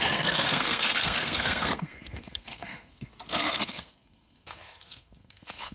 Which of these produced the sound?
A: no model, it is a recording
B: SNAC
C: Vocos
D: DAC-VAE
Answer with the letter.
B